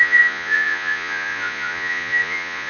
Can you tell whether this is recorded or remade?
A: remade